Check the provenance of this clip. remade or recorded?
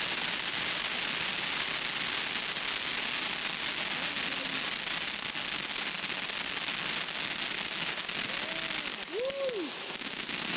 recorded